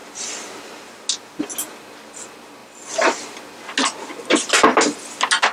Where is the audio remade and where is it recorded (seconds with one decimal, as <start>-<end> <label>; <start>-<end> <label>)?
0.0-5.5 recorded